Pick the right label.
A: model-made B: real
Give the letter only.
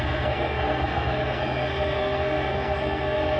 A